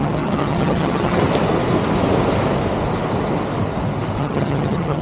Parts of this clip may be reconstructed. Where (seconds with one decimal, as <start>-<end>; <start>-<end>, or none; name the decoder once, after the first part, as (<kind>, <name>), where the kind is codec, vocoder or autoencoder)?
0.0-1.2 (vocoder, HiFi-GAN); 4.2-5.0